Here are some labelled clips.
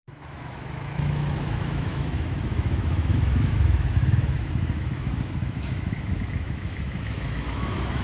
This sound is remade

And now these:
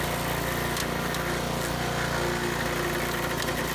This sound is recorded